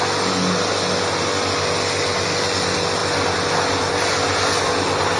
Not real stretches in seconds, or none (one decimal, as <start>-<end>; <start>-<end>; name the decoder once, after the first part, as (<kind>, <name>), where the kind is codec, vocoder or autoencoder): none

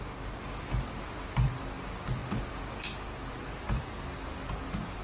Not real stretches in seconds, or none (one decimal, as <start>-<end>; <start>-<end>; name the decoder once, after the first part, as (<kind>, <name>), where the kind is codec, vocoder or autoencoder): none